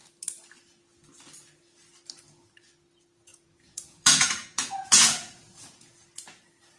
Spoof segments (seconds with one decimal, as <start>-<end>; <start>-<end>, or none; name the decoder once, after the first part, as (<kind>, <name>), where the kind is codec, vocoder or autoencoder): 3.3-5.9 (vocoder, Vocos)